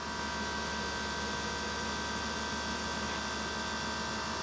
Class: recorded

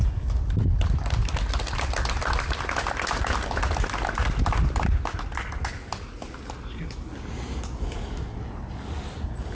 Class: recorded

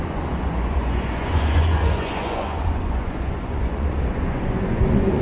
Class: remade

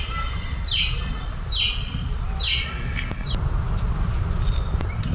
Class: recorded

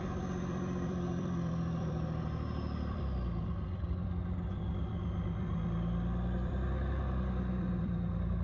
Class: remade